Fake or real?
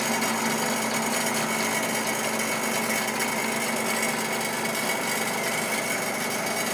real